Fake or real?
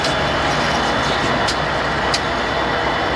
real